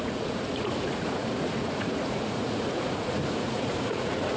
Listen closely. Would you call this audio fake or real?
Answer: fake